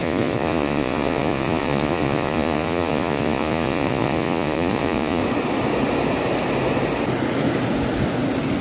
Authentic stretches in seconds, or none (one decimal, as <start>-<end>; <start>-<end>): 5.2-8.6